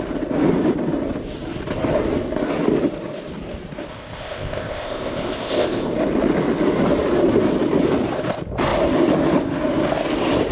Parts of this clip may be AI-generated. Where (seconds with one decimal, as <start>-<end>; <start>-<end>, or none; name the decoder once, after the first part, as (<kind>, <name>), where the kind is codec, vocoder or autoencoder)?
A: 3.9-5.9 (codec, ZipCodec)